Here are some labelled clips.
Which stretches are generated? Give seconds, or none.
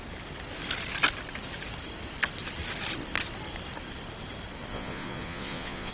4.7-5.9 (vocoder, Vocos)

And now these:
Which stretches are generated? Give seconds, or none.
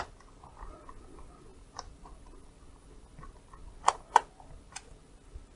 none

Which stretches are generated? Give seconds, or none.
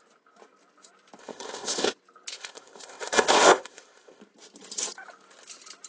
1.2-1.9 (codec, ZipCodec); 2.3-4.2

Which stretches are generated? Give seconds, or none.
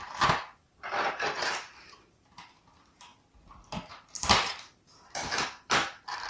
0.0-3.1 (vocoder, BigVGAN v2); 4.2-6.3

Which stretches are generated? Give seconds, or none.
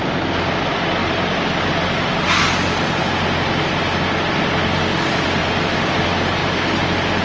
1.0-3.0 (vocoder, BigVGAN v2); 5.4-5.9; 6.4-7.2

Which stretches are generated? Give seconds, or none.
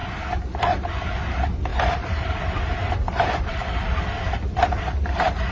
none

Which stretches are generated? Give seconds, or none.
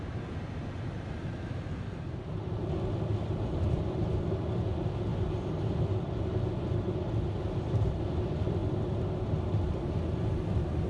none